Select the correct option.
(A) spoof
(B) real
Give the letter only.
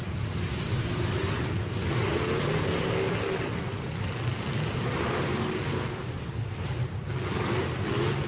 B